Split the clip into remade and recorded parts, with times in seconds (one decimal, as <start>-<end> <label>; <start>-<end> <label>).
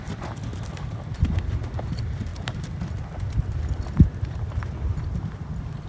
0.0-5.9 remade